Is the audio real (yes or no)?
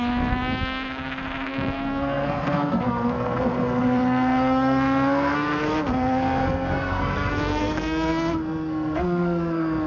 no